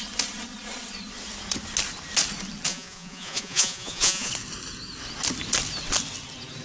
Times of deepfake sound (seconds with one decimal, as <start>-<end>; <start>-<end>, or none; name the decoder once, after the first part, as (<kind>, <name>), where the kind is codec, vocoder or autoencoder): 2.7-4.3 (vocoder, Vocos)